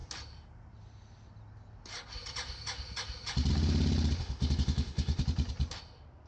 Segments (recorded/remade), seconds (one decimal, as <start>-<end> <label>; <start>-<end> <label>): 0.0-4.2 recorded; 4.2-5.2 remade; 5.2-6.3 recorded